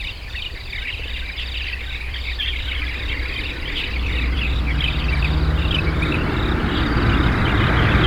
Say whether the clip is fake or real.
fake